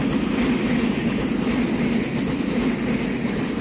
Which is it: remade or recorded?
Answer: recorded